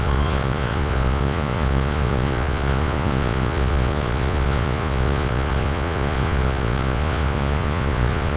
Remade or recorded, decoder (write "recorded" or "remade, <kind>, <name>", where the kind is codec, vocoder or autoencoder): remade, vocoder, Vocos